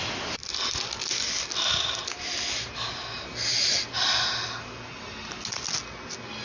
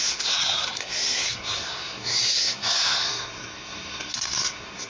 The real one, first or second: first